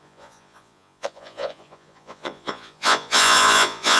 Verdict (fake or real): fake